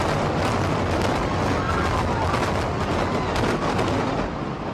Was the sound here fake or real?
real